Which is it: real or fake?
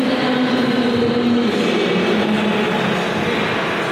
real